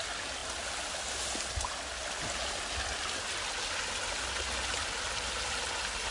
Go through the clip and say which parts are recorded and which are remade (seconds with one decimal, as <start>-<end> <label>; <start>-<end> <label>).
0.0-6.1 recorded